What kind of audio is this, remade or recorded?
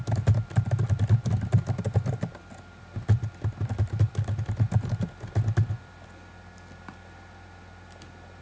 recorded